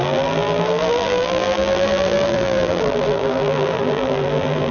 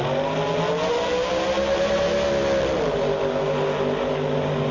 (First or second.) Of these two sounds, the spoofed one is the first